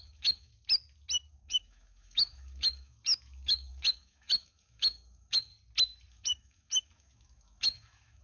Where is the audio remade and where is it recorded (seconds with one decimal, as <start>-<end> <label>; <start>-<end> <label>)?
0.0-0.5 remade; 0.5-1.3 recorded; 1.3-5.5 remade; 5.5-6.1 recorded; 6.1-8.2 remade